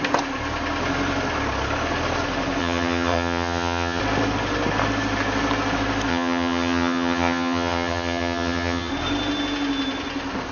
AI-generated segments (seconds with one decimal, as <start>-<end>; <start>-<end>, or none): 2.6-4.0; 6.1-8.9